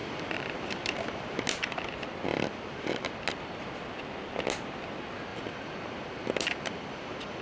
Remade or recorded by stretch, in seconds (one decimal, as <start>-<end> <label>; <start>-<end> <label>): 0.0-1.5 remade; 1.5-2.3 recorded; 2.3-3.1 remade; 3.1-5.3 recorded; 5.3-7.4 remade